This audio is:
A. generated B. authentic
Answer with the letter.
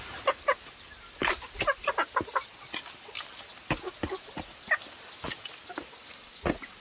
B